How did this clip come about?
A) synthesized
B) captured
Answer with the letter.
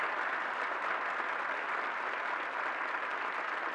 A